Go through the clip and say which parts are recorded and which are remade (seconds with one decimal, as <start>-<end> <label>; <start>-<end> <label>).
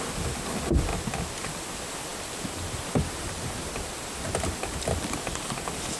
0.0-6.0 recorded